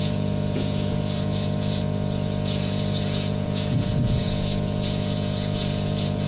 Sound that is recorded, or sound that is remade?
remade